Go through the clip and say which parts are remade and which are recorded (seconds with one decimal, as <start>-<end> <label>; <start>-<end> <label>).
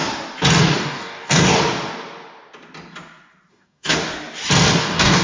0.0-0.6 recorded; 0.6-1.6 remade; 1.6-3.5 recorded; 3.5-4.1 remade; 4.1-4.8 recorded; 4.8-5.2 remade